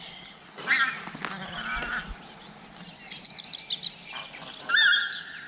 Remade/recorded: recorded